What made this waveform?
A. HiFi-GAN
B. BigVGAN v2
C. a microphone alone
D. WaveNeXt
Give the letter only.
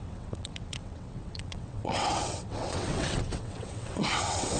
D